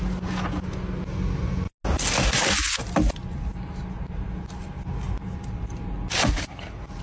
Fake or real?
real